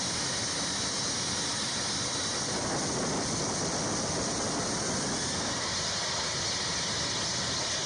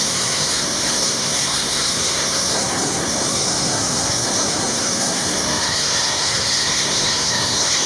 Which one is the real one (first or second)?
first